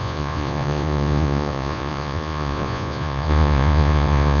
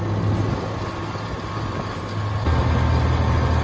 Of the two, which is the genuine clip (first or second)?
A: second